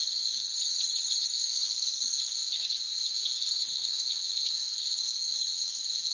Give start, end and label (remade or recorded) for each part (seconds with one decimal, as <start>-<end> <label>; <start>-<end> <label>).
0.0-0.5 remade; 0.5-1.3 recorded; 1.3-6.1 remade